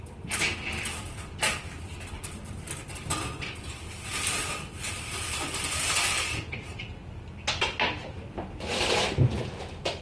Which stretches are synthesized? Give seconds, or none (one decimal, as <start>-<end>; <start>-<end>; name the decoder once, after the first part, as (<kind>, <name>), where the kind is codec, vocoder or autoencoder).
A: none